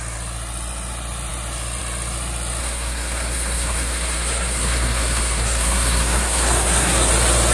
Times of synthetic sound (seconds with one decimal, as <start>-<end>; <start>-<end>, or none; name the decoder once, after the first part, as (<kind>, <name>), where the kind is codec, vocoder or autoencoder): 2.6-7.1 (codec, SNAC)